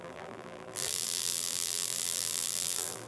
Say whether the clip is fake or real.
fake